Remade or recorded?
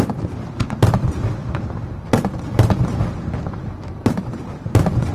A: recorded